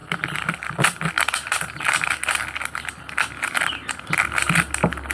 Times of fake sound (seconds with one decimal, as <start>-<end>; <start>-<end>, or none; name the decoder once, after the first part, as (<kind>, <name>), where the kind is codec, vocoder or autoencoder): none